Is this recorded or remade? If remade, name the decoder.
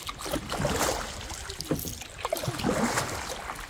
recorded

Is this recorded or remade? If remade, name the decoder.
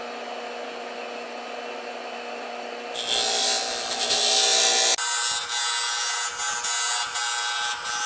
recorded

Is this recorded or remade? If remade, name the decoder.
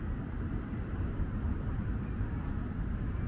recorded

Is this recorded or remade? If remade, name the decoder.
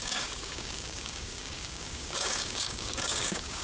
remade, codec, DAC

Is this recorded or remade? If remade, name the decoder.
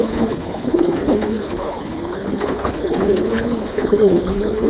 remade, codec, HILCodec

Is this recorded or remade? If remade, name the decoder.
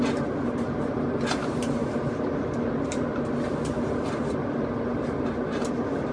recorded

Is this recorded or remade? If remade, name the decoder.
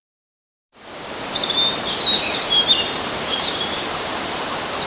remade, vocoder, BigVGAN v2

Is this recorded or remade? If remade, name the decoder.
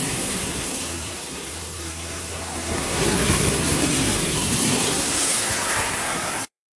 remade, codec, SNAC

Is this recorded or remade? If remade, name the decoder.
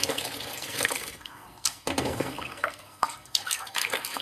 remade, codec, SNAC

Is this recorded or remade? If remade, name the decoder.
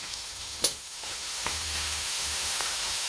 remade, autoencoder, DAC-VAE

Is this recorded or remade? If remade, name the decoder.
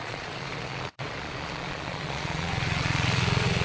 remade, vocoder, Vocos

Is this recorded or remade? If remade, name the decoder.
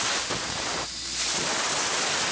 recorded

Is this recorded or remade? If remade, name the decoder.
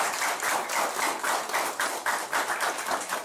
recorded